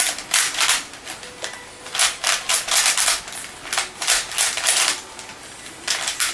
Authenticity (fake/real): real